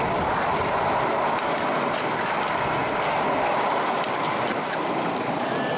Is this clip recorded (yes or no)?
yes